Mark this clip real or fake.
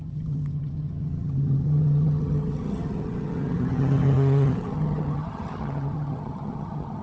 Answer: fake